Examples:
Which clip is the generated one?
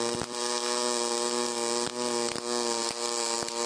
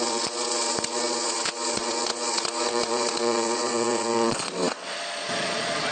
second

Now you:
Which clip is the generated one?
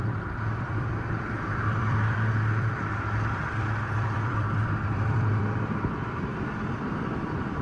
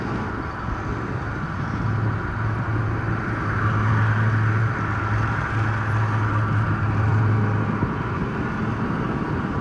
first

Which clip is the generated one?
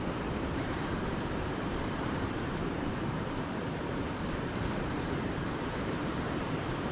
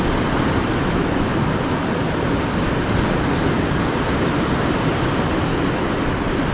first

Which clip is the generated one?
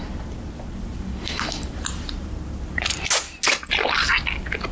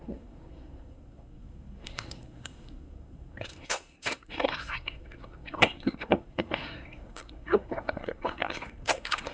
second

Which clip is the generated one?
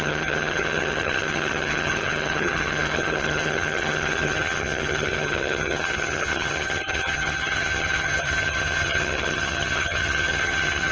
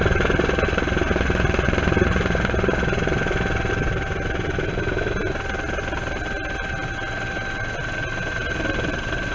first